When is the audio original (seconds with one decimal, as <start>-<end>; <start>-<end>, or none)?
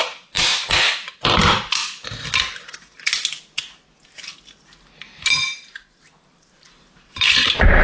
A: 0.5-1.1; 1.8-6.2